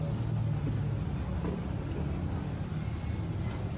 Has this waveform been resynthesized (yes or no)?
no